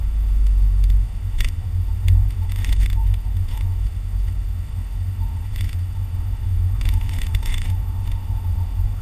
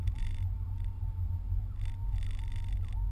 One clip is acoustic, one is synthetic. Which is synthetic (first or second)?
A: first